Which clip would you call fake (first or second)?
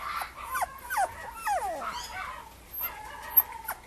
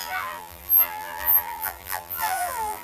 second